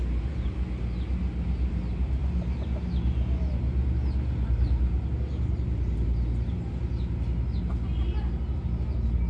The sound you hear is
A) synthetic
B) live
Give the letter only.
B